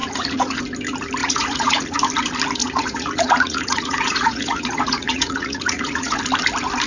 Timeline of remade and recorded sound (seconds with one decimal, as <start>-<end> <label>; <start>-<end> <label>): 0.0-0.6 remade; 0.6-1.2 recorded; 1.2-2.0 remade; 2.0-2.6 recorded; 2.6-6.2 remade; 6.2-6.9 recorded